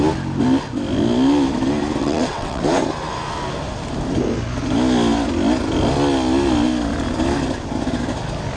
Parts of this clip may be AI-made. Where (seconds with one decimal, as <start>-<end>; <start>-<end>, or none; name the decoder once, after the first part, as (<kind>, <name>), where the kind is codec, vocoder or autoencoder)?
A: 2.0-2.6 (vocoder, WaveNeXt)